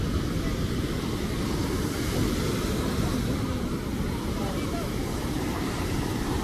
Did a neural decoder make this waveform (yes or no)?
no